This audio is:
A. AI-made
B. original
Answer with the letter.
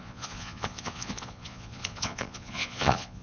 A